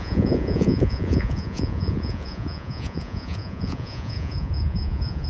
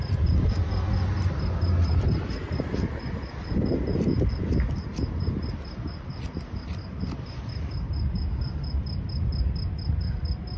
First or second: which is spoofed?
first